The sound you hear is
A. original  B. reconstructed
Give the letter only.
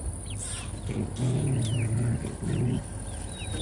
A